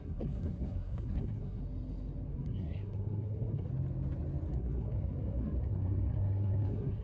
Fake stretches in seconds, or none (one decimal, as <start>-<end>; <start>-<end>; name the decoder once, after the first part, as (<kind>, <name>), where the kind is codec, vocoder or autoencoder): 0.0-1.6 (codec, SNAC); 2.3-3.7; 4.5-7.0